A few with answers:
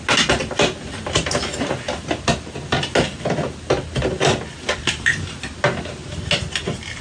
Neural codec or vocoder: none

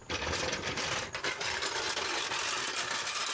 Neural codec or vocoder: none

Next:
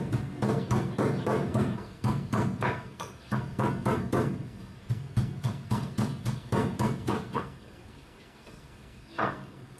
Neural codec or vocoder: codec, SNAC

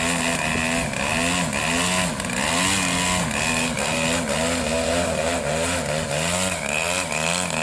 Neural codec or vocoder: none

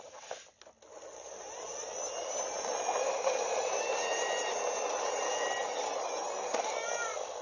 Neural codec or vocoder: none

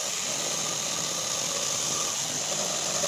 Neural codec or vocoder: none